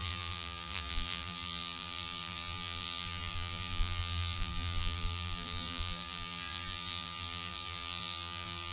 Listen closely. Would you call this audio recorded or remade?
remade